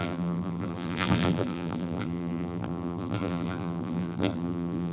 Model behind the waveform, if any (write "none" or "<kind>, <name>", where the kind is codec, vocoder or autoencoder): vocoder, BigVGAN v2